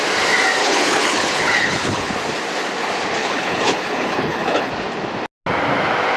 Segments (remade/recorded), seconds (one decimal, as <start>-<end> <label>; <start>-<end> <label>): 0.0-0.6 recorded; 0.6-2.1 remade; 2.1-3.2 recorded; 3.2-4.7 remade; 4.7-6.2 recorded